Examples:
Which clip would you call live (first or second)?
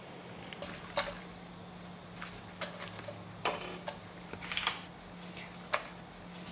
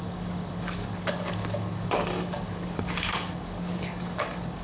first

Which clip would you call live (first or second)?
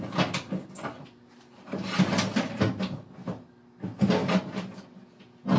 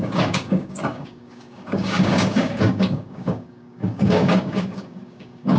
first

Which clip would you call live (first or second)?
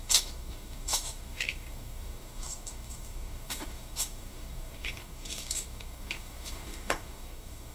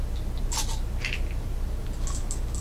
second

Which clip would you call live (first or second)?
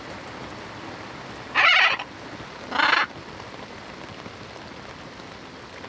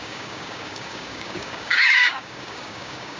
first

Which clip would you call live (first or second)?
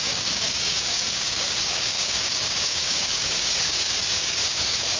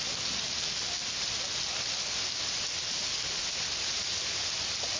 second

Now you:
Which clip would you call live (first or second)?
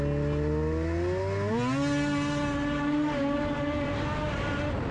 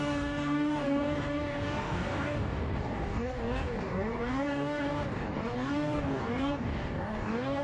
first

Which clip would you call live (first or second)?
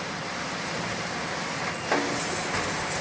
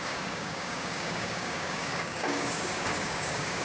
first